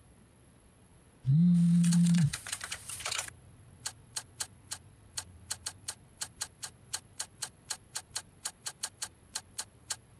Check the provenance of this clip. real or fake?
fake